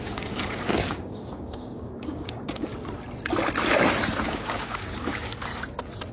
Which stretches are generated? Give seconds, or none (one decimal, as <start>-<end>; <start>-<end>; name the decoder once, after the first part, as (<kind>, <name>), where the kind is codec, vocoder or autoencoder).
0.0-2.7 (codec, DAC); 4.2-5.5